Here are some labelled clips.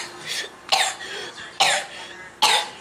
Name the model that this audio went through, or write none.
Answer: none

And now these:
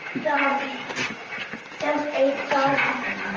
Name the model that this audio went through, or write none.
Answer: vocoder, BigVGAN v2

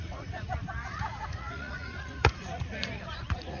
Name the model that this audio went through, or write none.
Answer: vocoder, Vocos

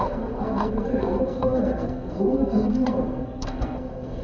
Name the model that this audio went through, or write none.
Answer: codec, SNAC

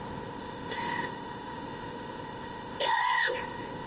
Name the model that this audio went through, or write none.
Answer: codec, ZipCodec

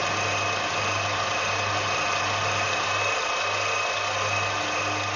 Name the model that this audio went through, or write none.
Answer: none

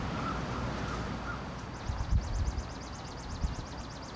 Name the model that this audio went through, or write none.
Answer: none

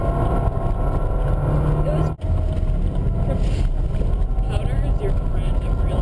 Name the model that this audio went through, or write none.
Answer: none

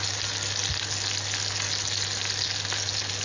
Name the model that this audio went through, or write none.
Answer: none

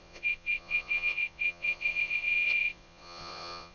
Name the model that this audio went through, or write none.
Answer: vocoder, Vocos